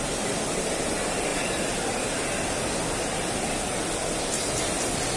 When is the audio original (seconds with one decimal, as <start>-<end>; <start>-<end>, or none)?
0.0-5.2